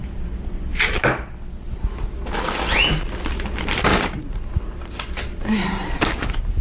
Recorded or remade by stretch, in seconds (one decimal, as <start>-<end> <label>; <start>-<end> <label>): 0.0-3.9 recorded; 3.9-6.6 remade